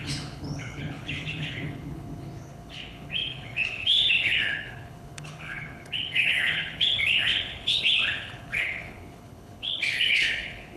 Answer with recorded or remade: remade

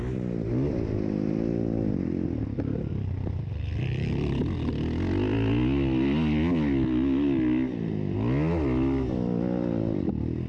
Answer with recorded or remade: recorded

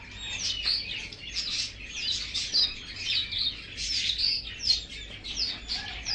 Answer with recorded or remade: recorded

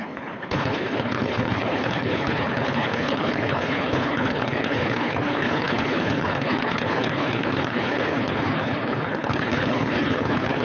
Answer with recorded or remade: remade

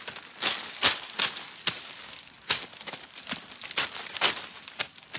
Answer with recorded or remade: recorded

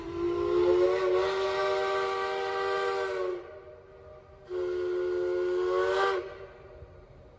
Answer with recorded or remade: recorded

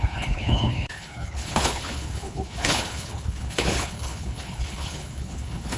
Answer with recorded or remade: remade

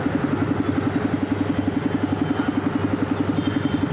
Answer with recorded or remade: recorded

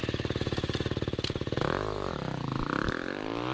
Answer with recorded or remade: recorded